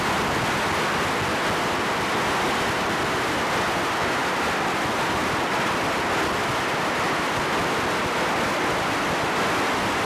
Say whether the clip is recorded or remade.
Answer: recorded